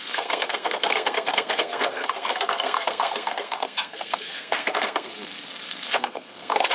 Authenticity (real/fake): fake